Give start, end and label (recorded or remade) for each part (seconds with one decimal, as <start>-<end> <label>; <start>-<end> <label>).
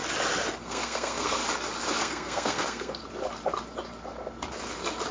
0.0-0.6 recorded; 0.6-1.4 remade; 1.4-2.0 recorded; 2.0-3.0 remade; 3.0-5.1 recorded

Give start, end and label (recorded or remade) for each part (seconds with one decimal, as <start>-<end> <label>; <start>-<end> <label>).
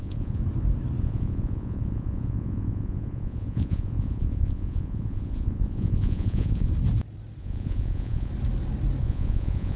0.0-0.4 remade; 0.4-1.0 recorded; 1.0-6.7 remade; 6.7-7.4 recorded; 7.4-8.3 remade; 8.3-9.0 recorded; 9.0-9.8 remade